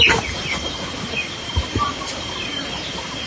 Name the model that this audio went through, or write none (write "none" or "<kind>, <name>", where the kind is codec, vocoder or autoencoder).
none